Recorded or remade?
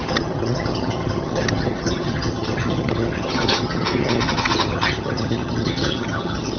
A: remade